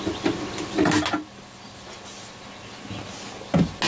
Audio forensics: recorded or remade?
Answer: recorded